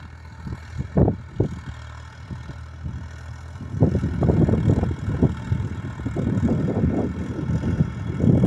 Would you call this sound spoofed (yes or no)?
no